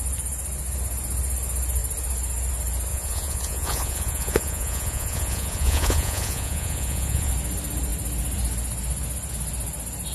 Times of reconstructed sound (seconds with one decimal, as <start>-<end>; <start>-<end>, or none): 2.9-7.3